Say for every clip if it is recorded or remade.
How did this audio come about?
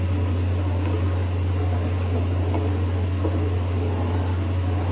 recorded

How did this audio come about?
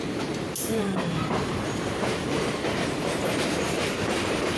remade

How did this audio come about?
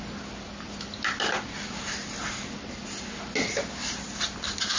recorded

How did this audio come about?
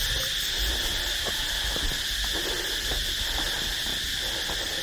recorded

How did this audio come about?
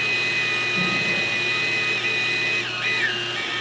recorded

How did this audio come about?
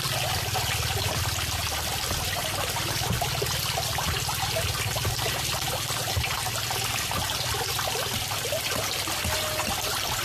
recorded